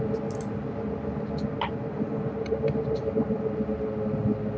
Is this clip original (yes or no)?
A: yes